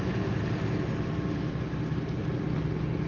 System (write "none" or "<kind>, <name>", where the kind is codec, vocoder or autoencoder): none